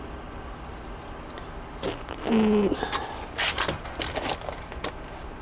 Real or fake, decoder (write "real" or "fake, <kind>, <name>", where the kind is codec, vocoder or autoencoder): real